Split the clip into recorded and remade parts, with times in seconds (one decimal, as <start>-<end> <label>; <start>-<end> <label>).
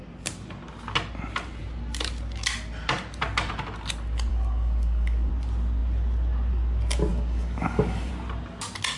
0.0-4.3 recorded; 4.3-5.3 remade; 5.3-7.1 recorded; 7.1-8.1 remade; 8.1-9.0 recorded